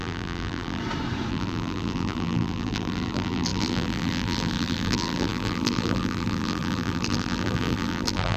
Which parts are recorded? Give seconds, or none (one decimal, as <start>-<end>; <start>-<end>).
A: 0.8-1.3